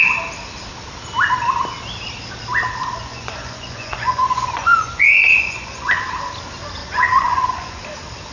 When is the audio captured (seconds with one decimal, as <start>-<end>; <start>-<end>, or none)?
0.0-3.0; 6.0-6.8; 7.8-8.3